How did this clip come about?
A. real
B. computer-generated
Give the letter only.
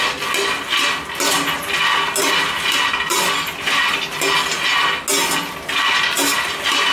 A